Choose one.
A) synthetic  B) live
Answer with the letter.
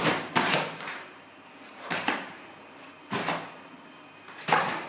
A